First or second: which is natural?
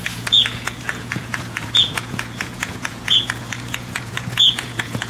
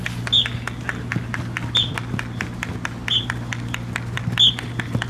second